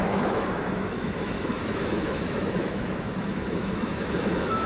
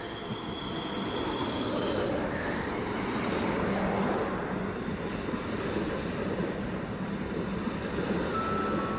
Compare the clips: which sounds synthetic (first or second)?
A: first